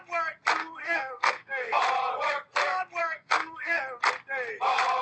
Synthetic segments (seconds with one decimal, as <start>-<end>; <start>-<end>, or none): 0.6-1.8; 3.0-3.8